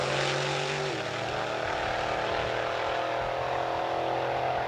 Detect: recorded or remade recorded